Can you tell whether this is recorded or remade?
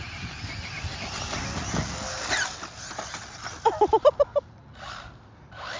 recorded